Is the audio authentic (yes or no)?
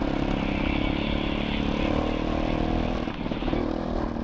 yes